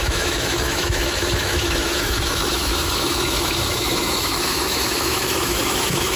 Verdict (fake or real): fake